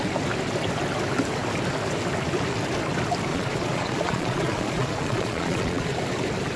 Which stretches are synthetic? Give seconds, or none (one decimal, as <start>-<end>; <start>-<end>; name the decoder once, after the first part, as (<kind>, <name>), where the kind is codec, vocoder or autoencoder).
3.3-6.0 (vocoder, Vocos)